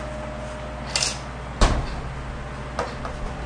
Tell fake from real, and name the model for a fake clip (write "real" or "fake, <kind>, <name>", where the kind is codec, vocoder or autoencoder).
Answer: real